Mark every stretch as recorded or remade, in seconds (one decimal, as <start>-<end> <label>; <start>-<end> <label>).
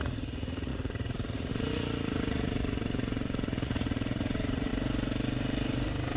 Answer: 0.0-4.7 remade; 4.7-6.2 recorded